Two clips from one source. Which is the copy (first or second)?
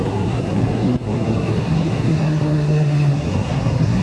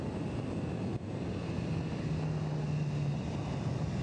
first